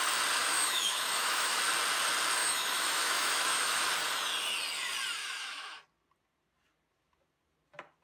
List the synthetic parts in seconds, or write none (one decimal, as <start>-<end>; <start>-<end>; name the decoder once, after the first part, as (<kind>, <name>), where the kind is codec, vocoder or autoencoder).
0.4-1.6 (autoencoder, DAC-VAE); 2.4-3.9; 5.2-5.8